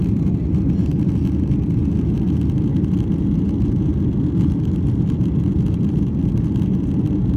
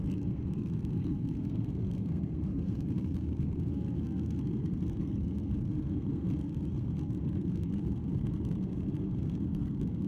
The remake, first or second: second